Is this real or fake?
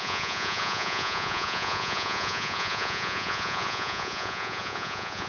fake